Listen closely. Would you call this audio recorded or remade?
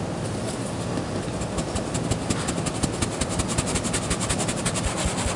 recorded